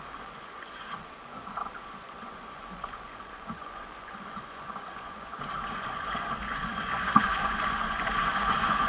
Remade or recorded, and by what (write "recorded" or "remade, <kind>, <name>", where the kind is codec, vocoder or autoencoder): remade, vocoder, Vocos